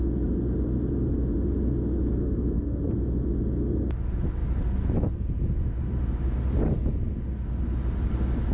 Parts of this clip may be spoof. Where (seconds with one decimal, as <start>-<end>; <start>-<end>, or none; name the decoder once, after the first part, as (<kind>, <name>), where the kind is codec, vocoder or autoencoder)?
2.2-2.8 (codec, SNAC)